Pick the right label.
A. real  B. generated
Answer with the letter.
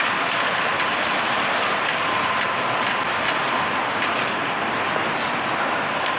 A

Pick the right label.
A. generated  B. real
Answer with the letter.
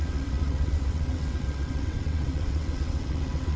A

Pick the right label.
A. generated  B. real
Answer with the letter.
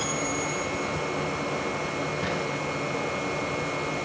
B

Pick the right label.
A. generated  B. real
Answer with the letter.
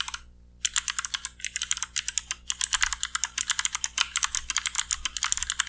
B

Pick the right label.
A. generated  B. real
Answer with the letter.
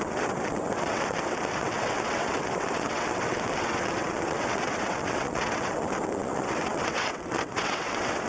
A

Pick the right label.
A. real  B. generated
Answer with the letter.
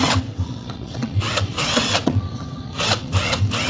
B